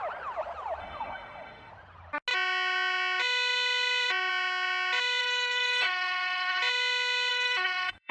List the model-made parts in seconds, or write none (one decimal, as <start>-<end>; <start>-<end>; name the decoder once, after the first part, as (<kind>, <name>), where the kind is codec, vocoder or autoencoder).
0.8-1.7 (autoencoder, DAC-VAE); 5.2-6.6; 7.3-8.1